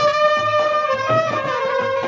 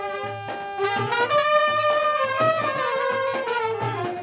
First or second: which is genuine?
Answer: second